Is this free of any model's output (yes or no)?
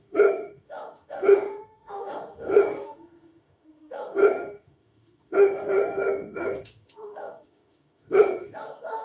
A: no